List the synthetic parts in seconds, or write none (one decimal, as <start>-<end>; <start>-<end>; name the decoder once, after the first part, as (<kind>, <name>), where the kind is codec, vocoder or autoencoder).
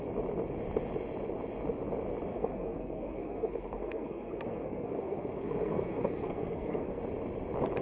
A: 2.3-7.0 (codec, SNAC)